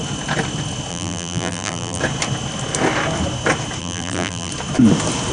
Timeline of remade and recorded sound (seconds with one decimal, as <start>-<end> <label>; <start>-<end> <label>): 0.0-0.9 recorded; 0.9-2.0 remade; 2.0-3.8 recorded; 3.8-4.5 remade; 4.5-5.3 recorded